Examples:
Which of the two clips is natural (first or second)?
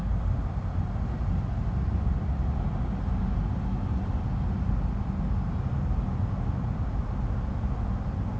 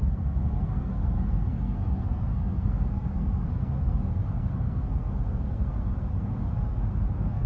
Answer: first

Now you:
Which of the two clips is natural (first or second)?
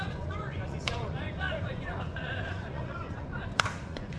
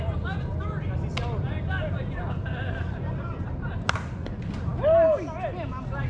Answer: second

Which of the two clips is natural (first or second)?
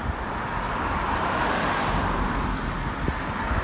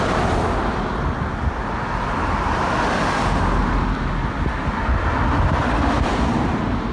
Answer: second